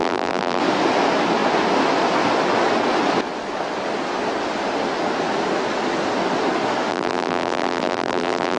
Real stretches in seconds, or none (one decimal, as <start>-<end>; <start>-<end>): 0.6-6.9